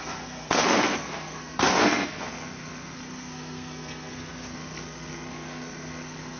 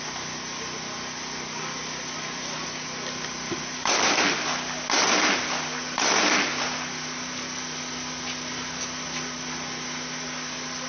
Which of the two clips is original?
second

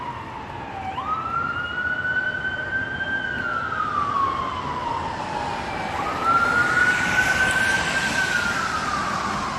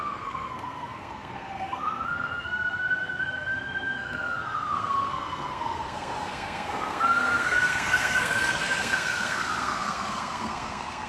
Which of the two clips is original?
first